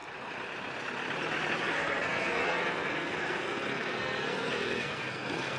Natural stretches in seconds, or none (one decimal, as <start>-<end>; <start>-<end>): 0.0-1.6